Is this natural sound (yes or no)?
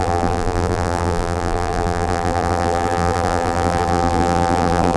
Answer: no